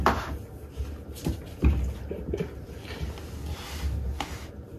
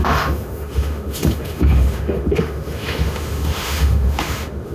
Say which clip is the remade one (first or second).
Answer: second